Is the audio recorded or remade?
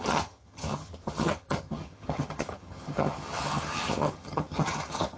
remade